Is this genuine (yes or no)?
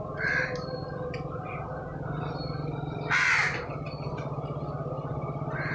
yes